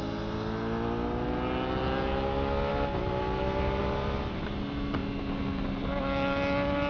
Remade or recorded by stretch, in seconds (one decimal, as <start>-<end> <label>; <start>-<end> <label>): 0.0-6.9 recorded